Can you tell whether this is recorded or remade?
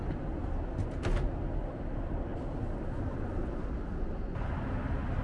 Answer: recorded